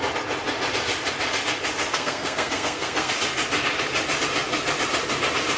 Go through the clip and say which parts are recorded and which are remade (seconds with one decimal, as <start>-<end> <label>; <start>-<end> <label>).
0.0-1.9 recorded; 1.9-3.1 remade; 3.1-5.6 recorded